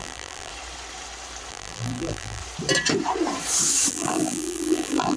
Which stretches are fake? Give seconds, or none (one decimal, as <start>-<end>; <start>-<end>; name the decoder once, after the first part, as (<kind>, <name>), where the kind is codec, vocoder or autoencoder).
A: 0.0-0.5 (vocoder, BigVGAN v2); 1.5-2.4; 3.9-5.2